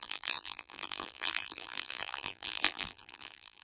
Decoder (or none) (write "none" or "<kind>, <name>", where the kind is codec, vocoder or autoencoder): vocoder, BigVGAN v2